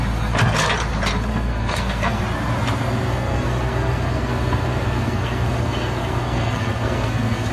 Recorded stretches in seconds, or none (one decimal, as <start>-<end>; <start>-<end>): 0.0-1.3; 2.2-3.1

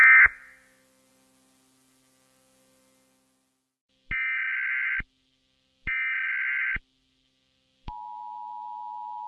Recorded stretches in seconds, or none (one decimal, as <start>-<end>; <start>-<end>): 0.0-9.3